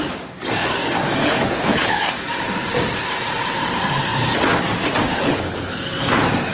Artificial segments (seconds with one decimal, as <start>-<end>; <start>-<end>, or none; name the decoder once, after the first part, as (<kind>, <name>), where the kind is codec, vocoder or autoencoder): 1.2-2.1 (codec, HILCodec); 5.1-5.9